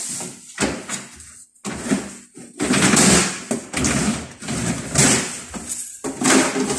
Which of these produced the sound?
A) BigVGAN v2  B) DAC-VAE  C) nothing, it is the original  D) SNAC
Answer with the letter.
C